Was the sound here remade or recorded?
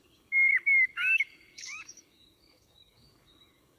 remade